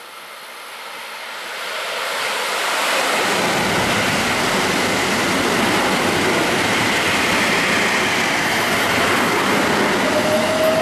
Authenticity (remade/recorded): recorded